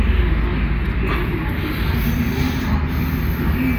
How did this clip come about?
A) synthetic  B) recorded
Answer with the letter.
B